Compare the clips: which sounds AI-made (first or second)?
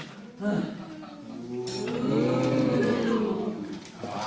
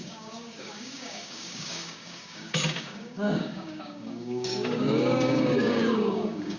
second